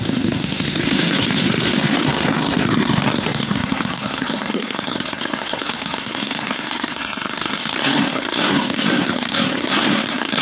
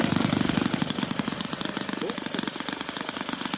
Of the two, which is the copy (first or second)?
first